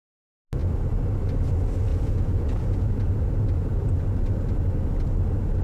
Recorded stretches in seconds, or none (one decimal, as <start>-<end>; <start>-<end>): 0.0-1.9; 3.1-5.6